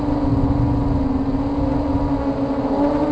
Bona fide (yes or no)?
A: yes